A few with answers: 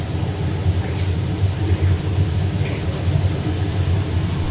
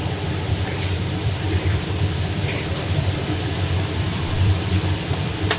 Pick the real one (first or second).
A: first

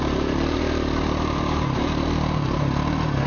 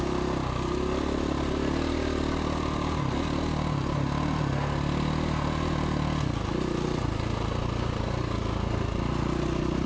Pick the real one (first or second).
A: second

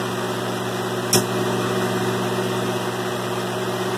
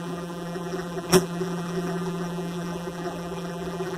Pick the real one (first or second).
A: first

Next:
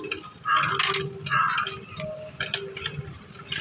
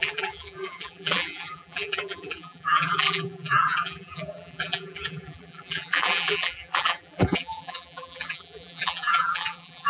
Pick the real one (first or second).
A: first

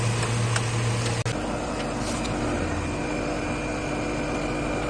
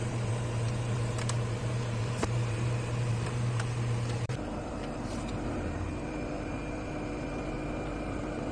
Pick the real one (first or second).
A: first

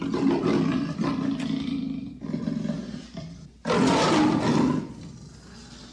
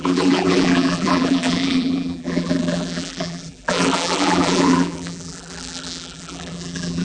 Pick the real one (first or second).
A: first